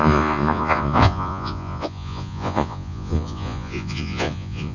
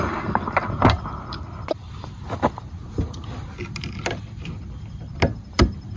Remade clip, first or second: first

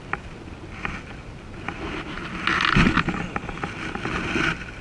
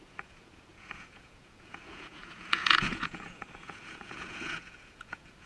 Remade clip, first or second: second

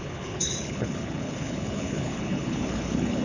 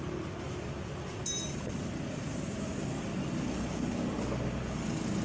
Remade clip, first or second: first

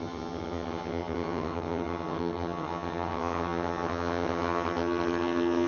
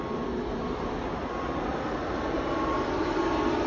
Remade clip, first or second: first